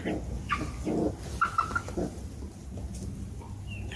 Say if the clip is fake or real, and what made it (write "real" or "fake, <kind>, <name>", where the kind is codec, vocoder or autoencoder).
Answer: real